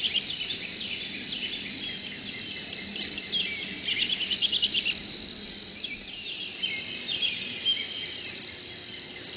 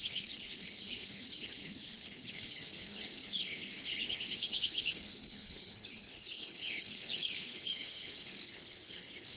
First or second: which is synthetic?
second